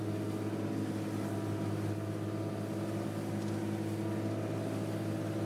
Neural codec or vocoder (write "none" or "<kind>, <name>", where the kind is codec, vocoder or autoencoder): none